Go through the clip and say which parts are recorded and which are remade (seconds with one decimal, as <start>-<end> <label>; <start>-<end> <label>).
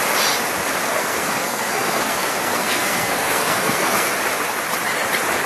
0.0-0.8 recorded; 0.8-4.1 remade; 4.1-5.5 recorded